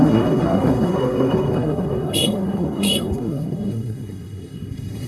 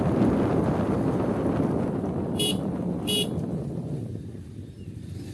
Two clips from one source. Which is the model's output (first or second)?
first